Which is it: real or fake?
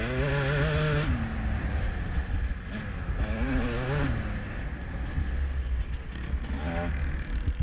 real